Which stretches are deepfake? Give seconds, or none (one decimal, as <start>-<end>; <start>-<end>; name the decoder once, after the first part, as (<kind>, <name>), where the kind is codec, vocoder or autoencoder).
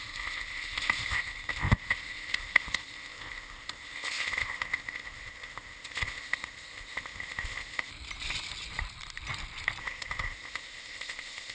0.0-7.9 (codec, ZipCodec); 9.8-11.5